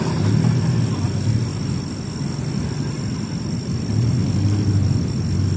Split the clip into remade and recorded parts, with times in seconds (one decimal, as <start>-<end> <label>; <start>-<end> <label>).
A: 0.0-5.6 recorded